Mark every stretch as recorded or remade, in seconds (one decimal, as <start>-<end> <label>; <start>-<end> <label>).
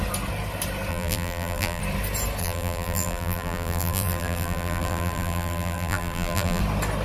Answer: 0.0-0.9 recorded; 0.9-1.8 remade; 1.8-2.4 recorded; 2.4-6.6 remade; 6.6-7.0 recorded